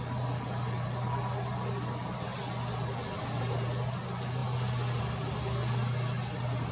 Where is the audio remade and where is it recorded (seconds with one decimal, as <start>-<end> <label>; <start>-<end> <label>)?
0.0-6.7 recorded